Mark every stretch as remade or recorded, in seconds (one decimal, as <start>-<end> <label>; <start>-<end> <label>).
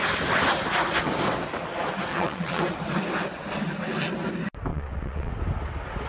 0.0-2.1 recorded; 2.1-2.6 remade; 2.6-4.7 recorded; 4.7-5.3 remade; 5.3-6.1 recorded